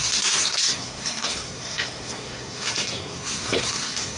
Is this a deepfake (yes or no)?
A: yes